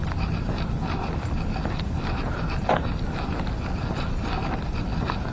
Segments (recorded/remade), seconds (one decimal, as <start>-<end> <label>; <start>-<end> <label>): 0.0-5.3 recorded

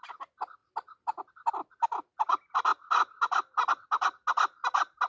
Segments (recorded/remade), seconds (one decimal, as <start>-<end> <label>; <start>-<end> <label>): 0.0-5.1 recorded

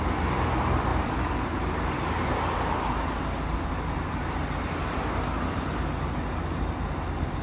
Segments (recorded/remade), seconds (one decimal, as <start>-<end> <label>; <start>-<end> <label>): 0.0-7.4 recorded

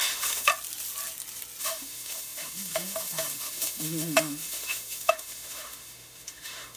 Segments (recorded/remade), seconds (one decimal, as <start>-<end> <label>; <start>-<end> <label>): 0.0-0.5 remade; 0.5-1.6 recorded; 1.6-6.8 remade

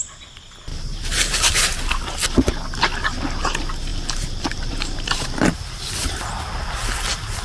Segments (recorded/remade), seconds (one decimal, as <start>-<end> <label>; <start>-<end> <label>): 0.0-0.7 recorded; 0.7-1.6 remade; 1.6-3.9 recorded; 3.9-5.7 remade; 5.7-7.4 recorded

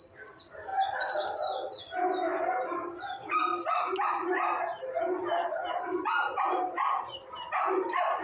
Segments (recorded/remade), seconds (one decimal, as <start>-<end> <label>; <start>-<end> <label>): 0.0-3.5 recorded; 3.5-4.4 remade; 4.4-8.2 recorded